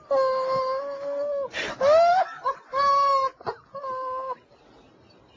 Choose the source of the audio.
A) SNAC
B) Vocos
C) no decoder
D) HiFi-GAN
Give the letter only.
C